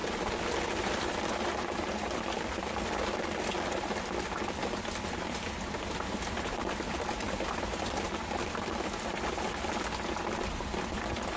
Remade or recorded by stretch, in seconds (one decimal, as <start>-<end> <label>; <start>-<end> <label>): 0.0-11.4 recorded